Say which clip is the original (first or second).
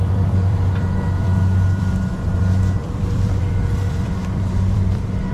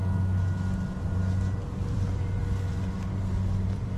second